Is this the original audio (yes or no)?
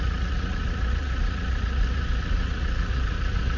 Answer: no